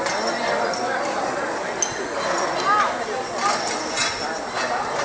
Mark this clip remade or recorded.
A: recorded